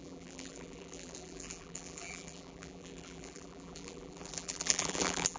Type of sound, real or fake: fake